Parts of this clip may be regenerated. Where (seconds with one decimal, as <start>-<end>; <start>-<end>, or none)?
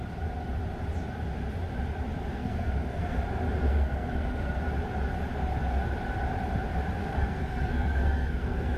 2.3-3.2; 3.7-4.6; 7.0-8.8